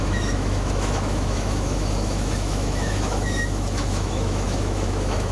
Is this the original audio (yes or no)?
no